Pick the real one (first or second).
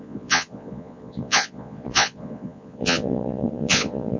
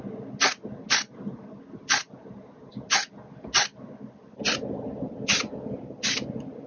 second